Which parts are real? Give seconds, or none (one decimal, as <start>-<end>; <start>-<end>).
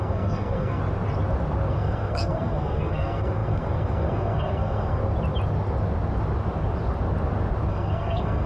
0.8-1.7; 5.0-7.7